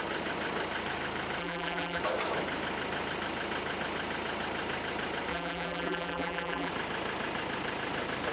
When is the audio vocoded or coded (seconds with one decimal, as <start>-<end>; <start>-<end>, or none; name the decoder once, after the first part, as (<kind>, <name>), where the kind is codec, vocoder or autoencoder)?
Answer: 1.4-2.0 (vocoder, BigVGAN v2); 5.3-6.7